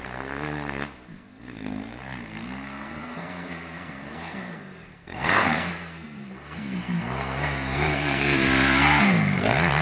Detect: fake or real fake